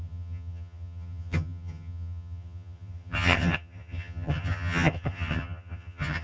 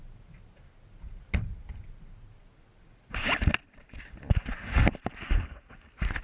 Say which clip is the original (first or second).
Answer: second